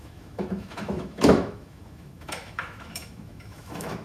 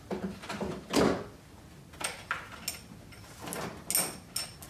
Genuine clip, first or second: second